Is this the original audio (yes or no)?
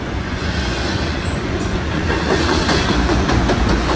no